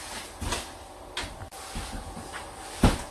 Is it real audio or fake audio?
real